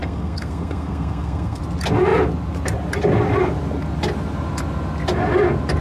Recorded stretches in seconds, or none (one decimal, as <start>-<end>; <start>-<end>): 1.6-5.8

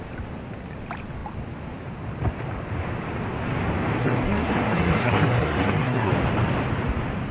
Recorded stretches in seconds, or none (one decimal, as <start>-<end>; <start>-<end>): 0.0-4.0; 6.1-7.3

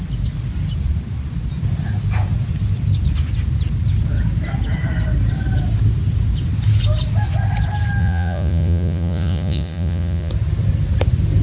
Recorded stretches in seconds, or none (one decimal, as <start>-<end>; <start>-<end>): 0.0-8.0; 10.3-11.4

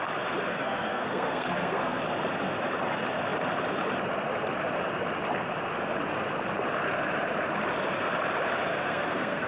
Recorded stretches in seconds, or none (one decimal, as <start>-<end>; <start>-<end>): 0.0-0.5; 2.0-8.7